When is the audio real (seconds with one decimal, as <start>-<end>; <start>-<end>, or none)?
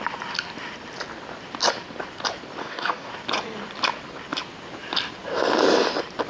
0.0-2.6; 3.1-6.3